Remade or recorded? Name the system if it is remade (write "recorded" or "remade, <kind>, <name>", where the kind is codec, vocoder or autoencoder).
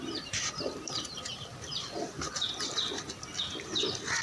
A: recorded